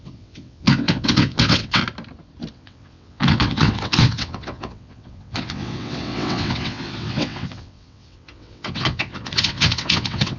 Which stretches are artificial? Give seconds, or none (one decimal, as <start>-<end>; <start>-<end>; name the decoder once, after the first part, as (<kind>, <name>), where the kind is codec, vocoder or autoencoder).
0.0-1.8 (vocoder, WaveNeXt); 2.5-10.4